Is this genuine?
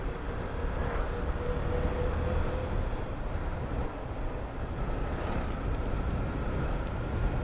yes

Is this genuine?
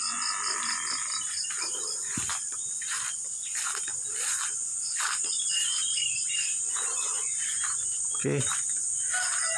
yes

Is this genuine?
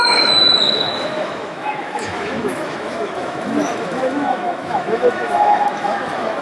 no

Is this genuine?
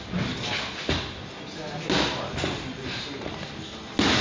yes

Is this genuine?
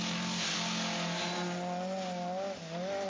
yes